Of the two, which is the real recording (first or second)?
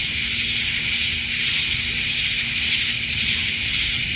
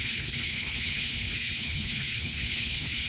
first